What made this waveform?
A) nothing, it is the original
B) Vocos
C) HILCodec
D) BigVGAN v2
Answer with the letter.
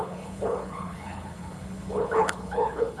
C